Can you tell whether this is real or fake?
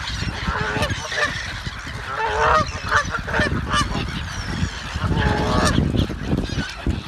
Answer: real